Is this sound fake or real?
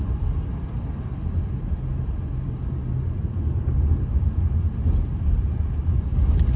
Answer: real